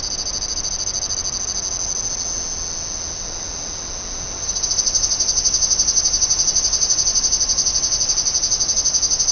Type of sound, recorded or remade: recorded